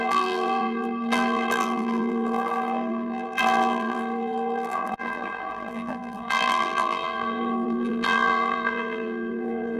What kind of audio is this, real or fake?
fake